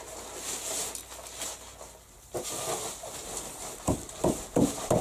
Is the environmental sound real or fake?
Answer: real